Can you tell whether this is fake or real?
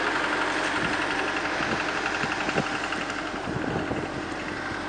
real